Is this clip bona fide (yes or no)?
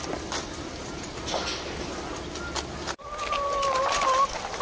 yes